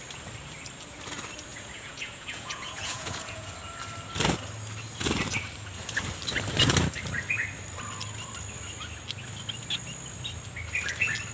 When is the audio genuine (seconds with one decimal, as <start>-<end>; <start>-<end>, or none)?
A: 0.0-1.5; 3.5-11.3